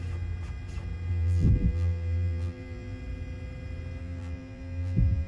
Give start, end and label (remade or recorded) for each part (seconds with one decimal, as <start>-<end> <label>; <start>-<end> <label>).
0.0-1.1 recorded; 1.1-3.0 remade; 3.0-4.0 recorded; 4.0-5.3 remade